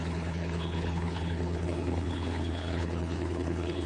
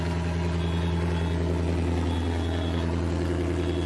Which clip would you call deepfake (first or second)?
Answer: first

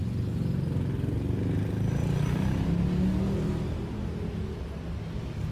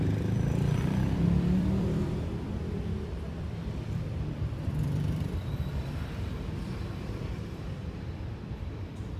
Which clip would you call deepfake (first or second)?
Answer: second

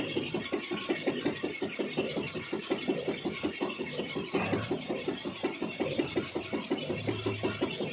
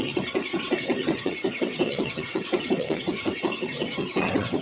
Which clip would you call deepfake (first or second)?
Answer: second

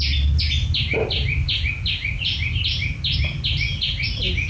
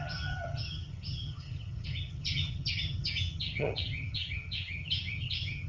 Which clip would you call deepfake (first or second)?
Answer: second